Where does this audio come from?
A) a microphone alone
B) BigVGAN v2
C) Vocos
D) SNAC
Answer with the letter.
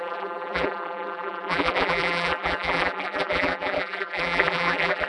B